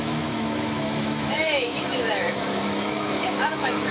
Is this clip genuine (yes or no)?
no